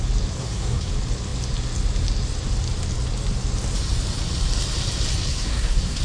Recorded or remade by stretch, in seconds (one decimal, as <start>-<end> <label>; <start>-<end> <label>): 0.0-0.4 recorded; 0.4-0.9 remade; 0.9-5.3 recorded; 5.3-6.0 remade